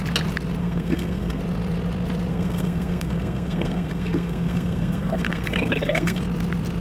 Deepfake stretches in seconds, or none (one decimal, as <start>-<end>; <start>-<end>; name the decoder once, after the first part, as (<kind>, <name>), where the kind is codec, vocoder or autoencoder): 0.6-1.4 (codec, SNAC); 2.3-6.2